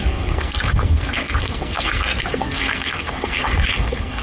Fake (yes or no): yes